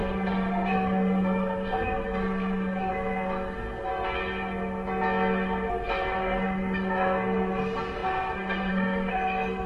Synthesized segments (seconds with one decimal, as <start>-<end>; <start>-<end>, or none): 0.0-3.9; 5.7-9.7